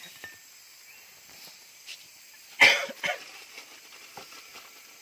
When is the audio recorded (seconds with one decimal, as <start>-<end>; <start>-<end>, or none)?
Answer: 0.0-5.0